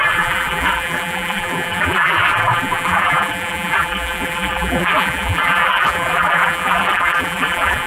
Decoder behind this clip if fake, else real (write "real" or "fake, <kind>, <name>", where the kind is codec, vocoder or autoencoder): fake, vocoder, BigVGAN v2